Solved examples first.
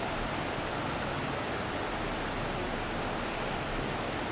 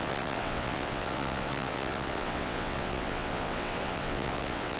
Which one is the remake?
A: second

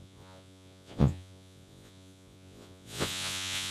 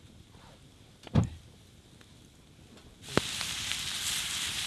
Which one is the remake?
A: first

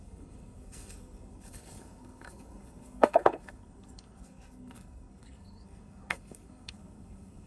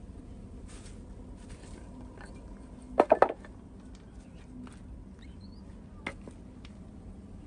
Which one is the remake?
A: first